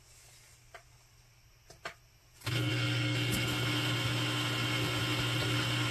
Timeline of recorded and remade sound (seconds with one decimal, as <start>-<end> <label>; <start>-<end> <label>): 0.0-5.9 recorded